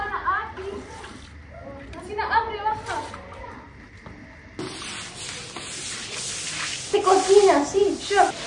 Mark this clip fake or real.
real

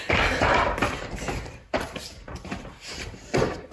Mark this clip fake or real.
fake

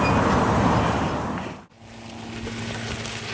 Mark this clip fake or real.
real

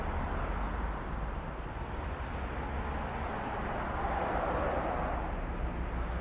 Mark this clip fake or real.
real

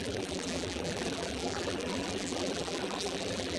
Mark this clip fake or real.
fake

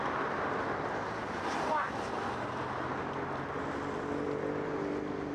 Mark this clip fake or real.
real